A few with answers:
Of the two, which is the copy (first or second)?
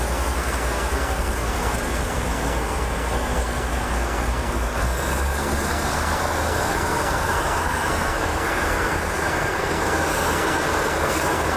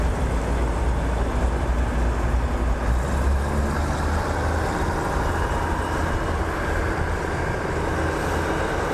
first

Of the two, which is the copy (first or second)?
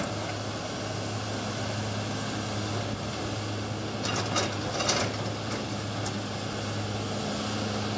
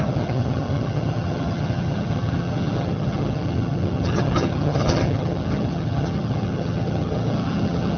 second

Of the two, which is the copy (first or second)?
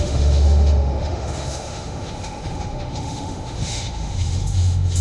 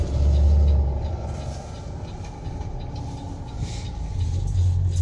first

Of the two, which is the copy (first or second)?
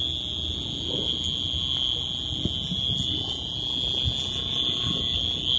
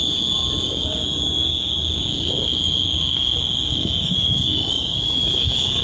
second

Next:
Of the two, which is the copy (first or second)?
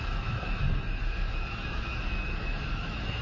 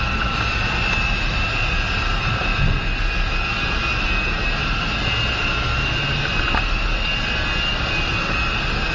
first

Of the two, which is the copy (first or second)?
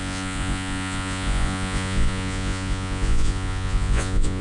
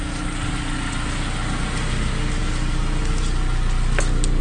first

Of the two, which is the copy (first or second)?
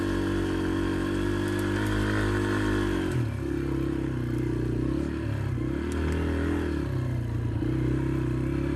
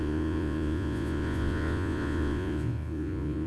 second